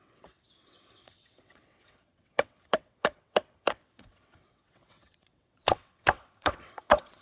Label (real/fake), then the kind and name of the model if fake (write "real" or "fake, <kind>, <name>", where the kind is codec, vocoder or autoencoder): fake, vocoder, WaveNeXt